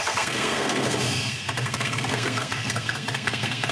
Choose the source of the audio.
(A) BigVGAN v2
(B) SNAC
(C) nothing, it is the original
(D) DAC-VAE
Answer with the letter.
B